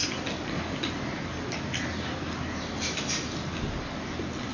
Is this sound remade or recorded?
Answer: recorded